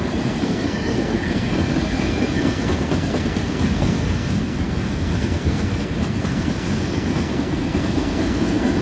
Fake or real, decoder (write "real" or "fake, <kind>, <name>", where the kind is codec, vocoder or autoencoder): fake, codec, SNAC